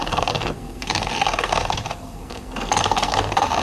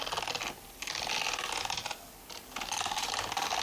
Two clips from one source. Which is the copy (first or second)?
first